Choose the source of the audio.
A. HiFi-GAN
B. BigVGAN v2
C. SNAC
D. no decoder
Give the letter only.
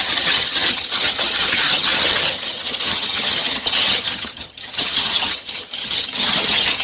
A